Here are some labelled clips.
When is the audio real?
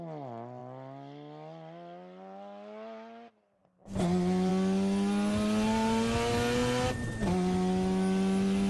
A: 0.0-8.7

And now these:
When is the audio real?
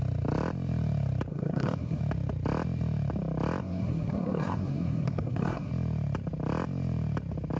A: 0.0-1.3; 2.0-3.6; 5.7-7.6